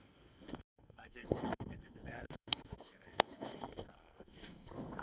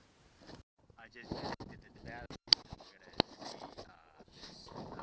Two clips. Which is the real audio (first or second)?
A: second